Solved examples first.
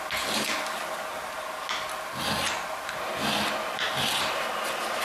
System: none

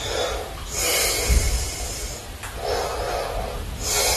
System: none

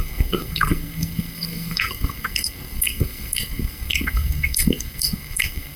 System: codec, SNAC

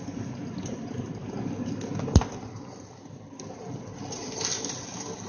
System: none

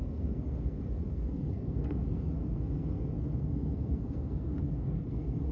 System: codec, SNAC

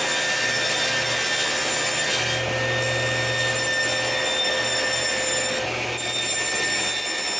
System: none